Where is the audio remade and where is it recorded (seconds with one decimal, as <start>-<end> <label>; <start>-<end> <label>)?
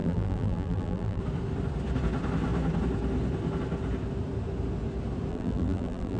0.0-1.2 remade; 1.2-5.3 recorded; 5.3-6.2 remade